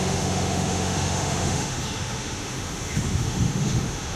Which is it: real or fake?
fake